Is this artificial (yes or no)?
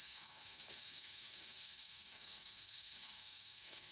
yes